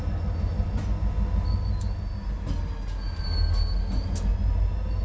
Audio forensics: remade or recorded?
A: recorded